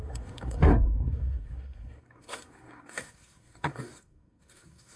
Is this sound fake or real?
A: fake